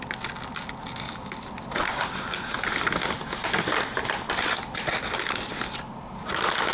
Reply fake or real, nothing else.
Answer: real